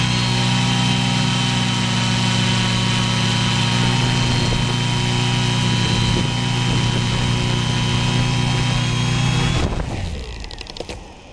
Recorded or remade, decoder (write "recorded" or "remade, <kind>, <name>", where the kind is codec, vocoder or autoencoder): recorded